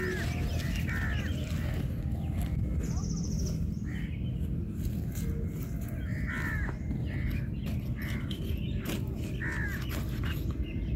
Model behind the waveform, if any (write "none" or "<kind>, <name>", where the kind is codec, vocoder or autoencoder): none